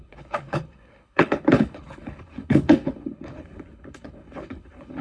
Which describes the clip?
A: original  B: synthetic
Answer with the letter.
B